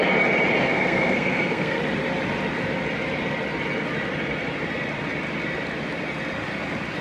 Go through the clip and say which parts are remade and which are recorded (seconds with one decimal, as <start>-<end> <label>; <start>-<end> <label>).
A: 0.0-0.7 recorded; 0.7-1.8 remade; 1.8-7.0 recorded